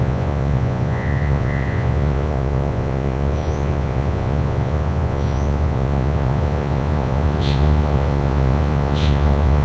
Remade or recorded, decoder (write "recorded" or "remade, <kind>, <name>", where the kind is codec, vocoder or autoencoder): remade, vocoder, Vocos